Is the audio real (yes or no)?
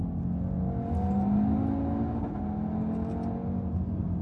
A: yes